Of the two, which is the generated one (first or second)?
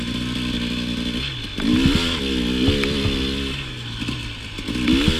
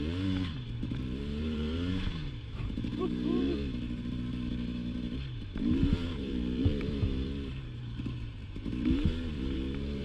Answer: second